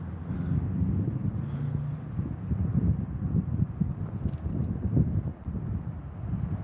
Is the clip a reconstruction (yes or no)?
no